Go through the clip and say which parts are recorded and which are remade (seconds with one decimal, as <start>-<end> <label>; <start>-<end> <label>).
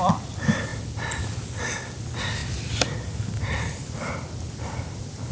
0.0-5.3 recorded